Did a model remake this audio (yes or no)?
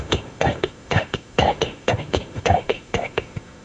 yes